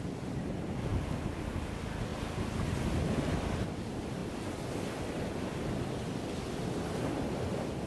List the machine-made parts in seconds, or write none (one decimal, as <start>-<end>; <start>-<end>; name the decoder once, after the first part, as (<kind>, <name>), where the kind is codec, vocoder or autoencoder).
0.9-1.5 (vocoder, BigVGAN v2)